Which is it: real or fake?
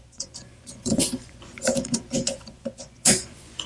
fake